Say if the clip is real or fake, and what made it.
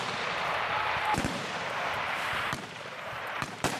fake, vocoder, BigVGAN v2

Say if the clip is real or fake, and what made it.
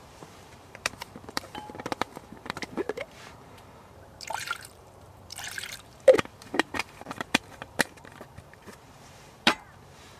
fake, vocoder, BigVGAN v2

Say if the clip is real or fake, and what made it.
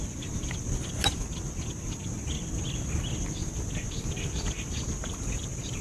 real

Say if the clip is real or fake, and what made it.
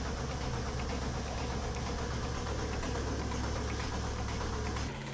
real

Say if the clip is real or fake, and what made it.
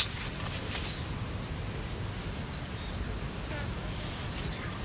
real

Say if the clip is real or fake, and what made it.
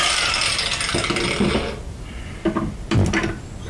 real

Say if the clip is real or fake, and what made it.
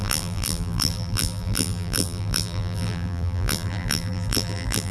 fake, vocoder, BigVGAN v2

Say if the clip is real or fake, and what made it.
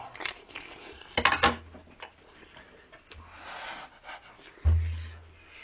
real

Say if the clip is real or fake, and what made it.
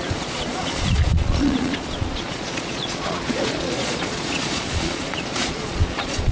fake, vocoder, Vocos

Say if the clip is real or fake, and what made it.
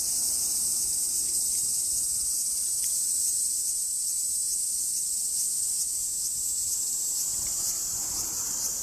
fake, vocoder, BigVGAN v2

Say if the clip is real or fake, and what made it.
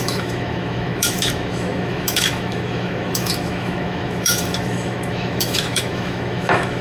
fake, autoencoder, DAC-VAE